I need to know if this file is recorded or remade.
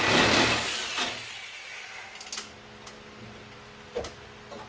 recorded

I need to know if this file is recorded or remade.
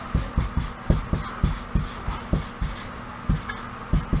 recorded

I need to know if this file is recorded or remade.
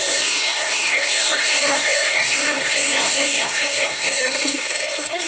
remade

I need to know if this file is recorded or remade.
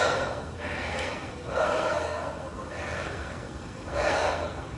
remade